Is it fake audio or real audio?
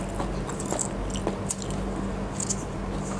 real